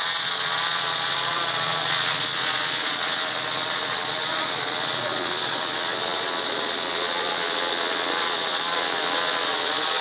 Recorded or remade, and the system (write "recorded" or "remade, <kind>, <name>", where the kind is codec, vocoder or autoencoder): remade, vocoder, Vocos